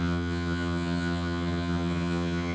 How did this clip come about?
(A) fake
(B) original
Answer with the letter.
A